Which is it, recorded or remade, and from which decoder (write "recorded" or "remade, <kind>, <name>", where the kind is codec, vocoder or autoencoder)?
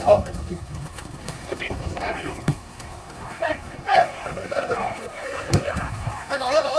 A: remade, codec, SNAC